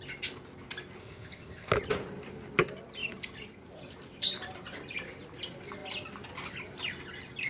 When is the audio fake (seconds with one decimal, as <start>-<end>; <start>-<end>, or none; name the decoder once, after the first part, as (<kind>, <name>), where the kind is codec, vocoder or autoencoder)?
1.0-1.7 (codec, ZipCodec)